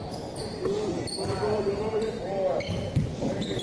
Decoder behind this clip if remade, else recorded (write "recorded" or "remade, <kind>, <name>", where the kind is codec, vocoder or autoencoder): recorded